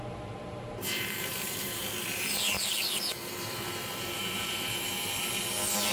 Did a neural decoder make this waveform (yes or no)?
yes